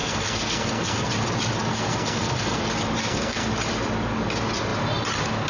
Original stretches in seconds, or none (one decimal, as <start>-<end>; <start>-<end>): 1.1-1.7; 2.6-3.0; 3.5-5.5